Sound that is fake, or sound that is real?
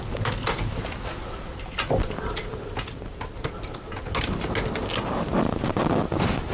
real